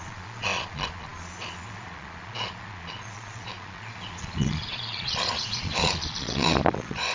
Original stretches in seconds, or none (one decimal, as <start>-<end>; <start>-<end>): none

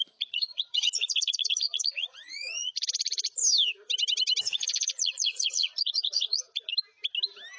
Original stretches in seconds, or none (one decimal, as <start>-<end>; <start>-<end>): 3.4-4.4; 6.7-7.6

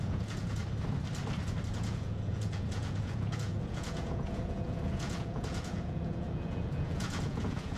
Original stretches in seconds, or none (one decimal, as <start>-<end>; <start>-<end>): 0.6-1.7